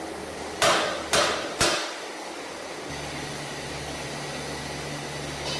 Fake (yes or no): no